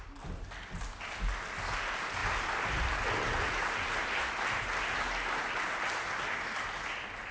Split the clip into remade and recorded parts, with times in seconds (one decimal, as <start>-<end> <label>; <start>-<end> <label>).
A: 0.0-7.3 recorded